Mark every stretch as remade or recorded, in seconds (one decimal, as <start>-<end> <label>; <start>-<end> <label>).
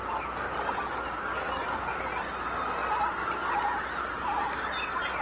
0.0-5.2 recorded